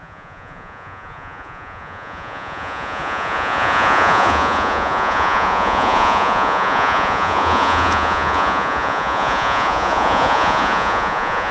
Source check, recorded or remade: remade